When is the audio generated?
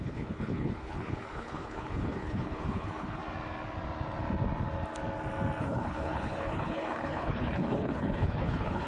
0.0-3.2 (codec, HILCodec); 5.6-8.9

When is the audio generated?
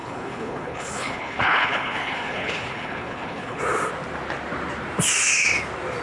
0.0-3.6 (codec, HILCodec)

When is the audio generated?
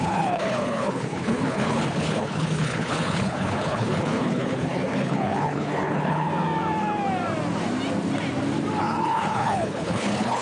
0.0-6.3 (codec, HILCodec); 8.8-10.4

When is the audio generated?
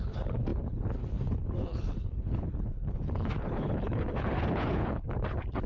0.0-5.7 (codec, HILCodec)